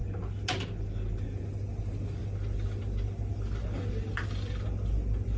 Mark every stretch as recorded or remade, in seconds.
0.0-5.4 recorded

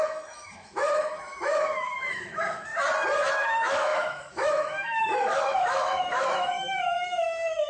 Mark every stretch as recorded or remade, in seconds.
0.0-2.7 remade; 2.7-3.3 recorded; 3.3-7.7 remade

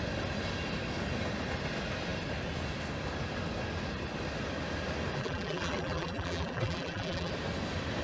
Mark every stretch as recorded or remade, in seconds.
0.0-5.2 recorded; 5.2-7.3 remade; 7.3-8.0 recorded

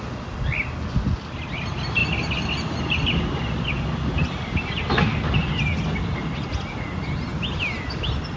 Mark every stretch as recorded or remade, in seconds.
0.0-8.4 recorded